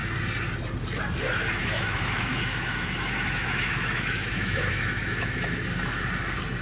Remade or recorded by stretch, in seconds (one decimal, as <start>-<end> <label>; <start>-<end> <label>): 0.0-1.6 recorded; 1.6-5.6 remade; 5.6-6.6 recorded